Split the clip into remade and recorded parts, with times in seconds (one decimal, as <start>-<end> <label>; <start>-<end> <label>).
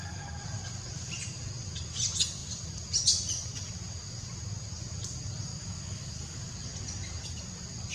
0.0-5.5 recorded; 5.5-6.4 remade; 6.4-7.9 recorded